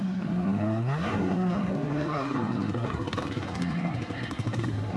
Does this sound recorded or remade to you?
remade